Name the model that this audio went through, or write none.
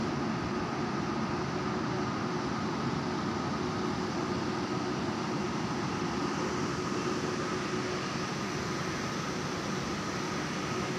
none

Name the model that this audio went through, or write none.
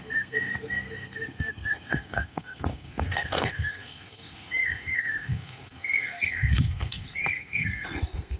codec, SNAC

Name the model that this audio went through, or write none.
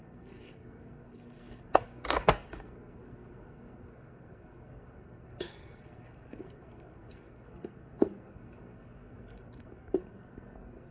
codec, SNAC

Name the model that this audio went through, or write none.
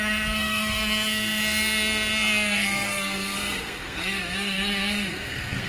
codec, SNAC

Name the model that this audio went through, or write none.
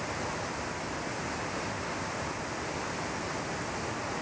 none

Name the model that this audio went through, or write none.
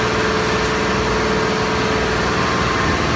none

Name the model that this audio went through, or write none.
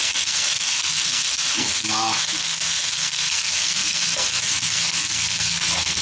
codec, SNAC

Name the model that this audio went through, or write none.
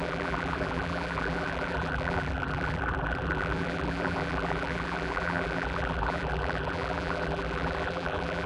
vocoder, BigVGAN v2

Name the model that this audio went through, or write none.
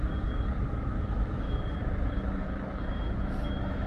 autoencoder, DAC-VAE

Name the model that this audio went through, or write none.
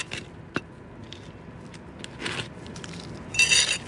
none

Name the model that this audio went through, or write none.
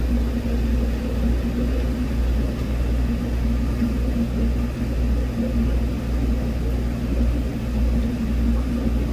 none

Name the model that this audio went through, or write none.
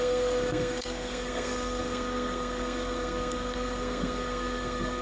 codec, SNAC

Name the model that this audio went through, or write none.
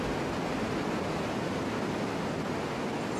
none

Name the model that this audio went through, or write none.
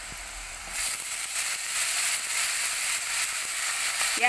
none